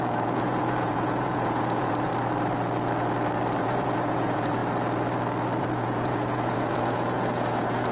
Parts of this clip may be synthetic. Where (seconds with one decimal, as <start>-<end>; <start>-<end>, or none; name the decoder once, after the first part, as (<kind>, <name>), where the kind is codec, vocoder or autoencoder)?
0.0-2.1 (vocoder, Vocos); 3.6-4.6; 5.6-7.9